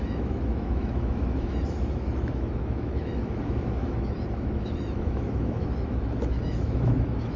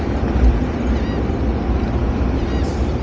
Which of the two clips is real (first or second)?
second